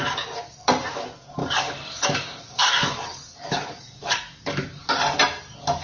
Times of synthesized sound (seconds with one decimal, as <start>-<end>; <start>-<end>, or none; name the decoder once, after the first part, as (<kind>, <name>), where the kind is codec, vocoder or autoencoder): 1.4-4.9 (codec, DAC)